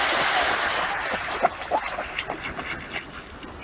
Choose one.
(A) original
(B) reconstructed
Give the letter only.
A